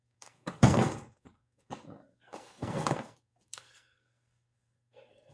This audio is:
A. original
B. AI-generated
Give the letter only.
B